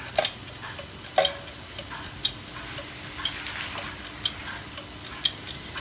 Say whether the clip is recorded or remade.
recorded